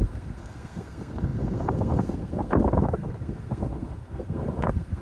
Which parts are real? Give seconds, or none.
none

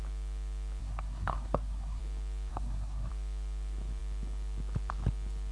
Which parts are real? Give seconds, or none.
0.0-0.8; 2.0-2.5; 3.1-5.5

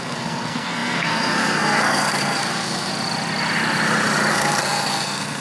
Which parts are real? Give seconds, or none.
2.9-4.3